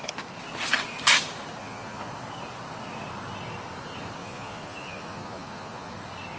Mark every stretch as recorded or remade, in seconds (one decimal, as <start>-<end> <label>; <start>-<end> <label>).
0.0-1.6 recorded; 1.6-2.1 remade; 2.1-4.2 recorded; 4.2-5.9 remade; 5.9-6.4 recorded